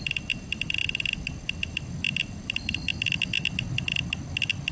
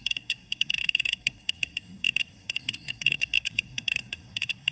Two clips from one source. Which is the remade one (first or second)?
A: second